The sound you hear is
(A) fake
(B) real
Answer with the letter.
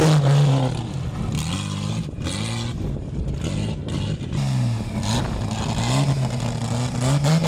B